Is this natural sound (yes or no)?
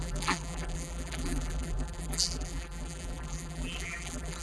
no